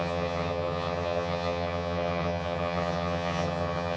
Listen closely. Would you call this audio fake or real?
fake